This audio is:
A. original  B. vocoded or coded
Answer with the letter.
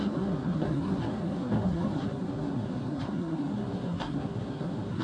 B